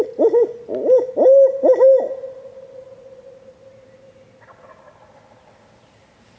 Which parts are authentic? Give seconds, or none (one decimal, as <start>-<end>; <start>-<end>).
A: 0.0-6.4